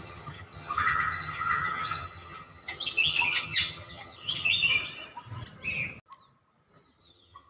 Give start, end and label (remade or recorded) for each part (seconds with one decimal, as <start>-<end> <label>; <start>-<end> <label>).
0.0-4.7 remade; 4.7-7.0 recorded; 7.0-7.5 remade